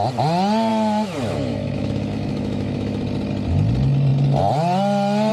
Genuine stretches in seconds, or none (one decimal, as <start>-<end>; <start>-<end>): 0.0-0.7; 3.0-5.3